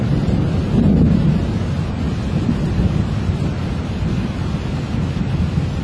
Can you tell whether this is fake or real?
real